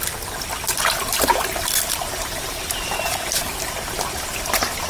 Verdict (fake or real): real